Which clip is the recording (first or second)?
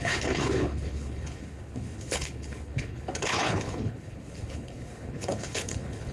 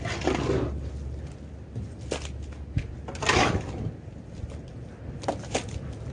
second